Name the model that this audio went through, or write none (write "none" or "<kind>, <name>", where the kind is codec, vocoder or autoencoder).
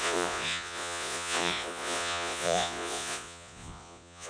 vocoder, Vocos